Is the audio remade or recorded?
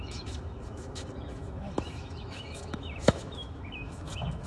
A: remade